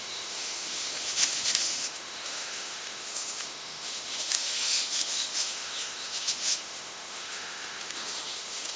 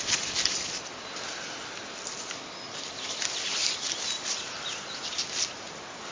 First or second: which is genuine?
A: second